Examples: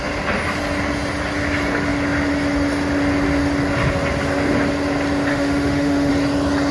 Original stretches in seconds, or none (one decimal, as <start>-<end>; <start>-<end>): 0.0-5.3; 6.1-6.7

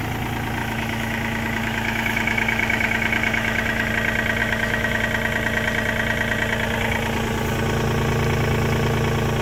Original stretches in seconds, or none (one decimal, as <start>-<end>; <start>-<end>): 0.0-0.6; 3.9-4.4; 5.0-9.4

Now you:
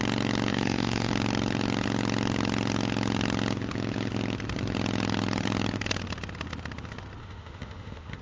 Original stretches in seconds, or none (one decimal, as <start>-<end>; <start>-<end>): 0.0-0.5; 1.1-7.2

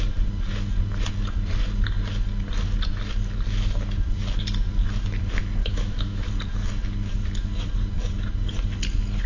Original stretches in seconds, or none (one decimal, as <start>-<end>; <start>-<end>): 0.0-5.6; 6.3-9.3

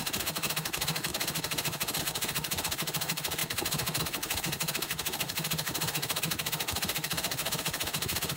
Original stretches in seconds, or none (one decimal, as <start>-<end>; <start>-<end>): none

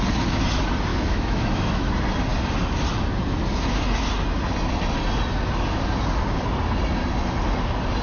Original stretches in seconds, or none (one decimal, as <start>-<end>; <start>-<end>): 0.0-0.9; 1.9-8.0